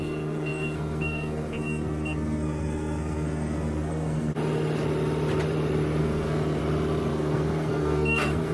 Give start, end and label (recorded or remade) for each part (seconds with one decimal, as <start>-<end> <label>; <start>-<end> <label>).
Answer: 0.0-4.3 remade; 4.3-6.0 recorded; 6.0-6.6 remade; 6.6-7.1 recorded; 7.1-8.5 remade